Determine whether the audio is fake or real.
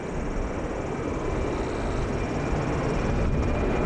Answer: real